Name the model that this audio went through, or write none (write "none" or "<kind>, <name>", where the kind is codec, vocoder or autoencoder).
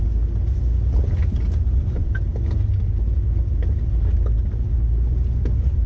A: none